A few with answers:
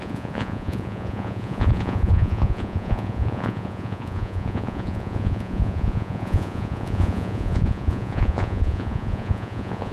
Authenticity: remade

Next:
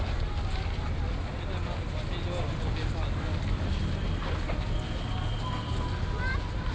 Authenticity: recorded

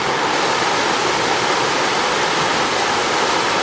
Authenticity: recorded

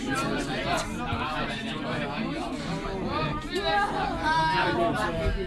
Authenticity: recorded